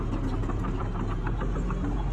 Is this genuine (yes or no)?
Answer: yes